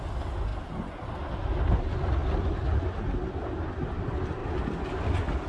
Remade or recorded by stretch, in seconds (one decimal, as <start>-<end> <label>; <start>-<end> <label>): 0.0-5.5 recorded